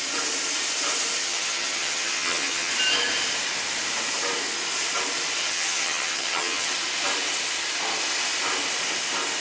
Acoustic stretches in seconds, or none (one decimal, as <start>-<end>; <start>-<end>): 0.0-1.2; 2.7-5.4; 6.7-9.4